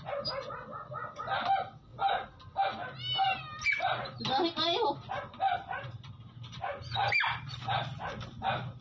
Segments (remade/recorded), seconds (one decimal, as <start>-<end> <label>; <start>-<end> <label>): 0.0-8.8 recorded